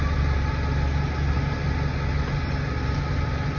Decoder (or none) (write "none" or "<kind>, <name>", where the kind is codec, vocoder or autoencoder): none